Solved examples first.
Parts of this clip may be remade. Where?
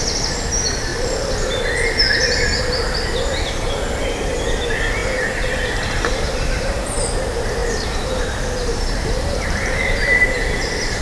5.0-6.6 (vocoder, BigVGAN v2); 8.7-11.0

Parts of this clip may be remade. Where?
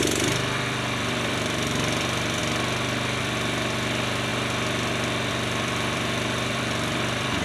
0.0-2.4 (vocoder, BigVGAN v2); 3.2-4.3; 5.3-7.4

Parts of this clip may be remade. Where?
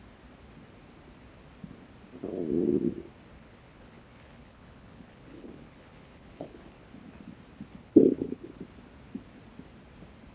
3.4-6.9 (codec, HILCodec); 7.7-8.6